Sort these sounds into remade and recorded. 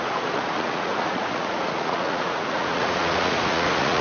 remade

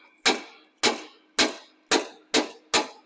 recorded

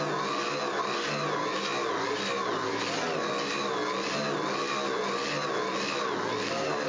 recorded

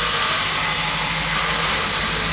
recorded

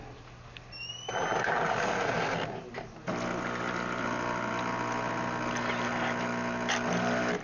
recorded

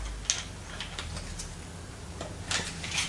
recorded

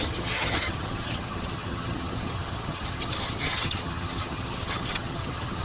remade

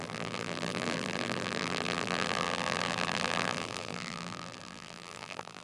remade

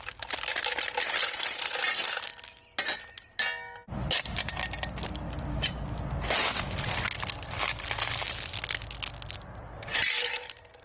recorded